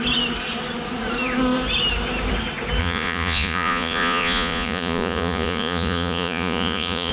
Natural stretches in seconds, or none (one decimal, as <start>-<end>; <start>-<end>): 0.0-2.8